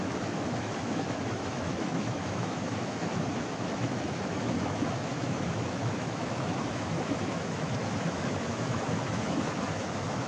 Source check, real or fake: fake